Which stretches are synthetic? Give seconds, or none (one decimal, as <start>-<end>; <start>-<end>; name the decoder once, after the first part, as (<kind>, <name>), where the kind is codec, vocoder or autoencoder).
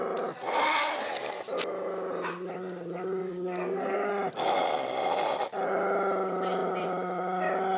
3.2-4.1 (codec, SNAC)